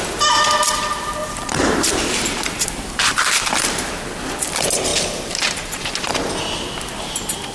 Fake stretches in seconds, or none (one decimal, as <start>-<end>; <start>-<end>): 1.2-4.3